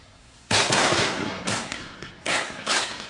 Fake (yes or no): yes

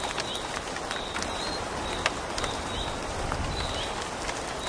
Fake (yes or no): no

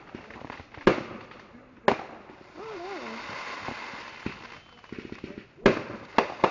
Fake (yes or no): no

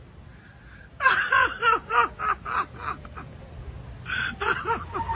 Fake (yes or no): no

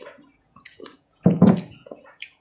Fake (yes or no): yes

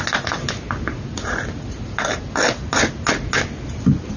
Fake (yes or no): no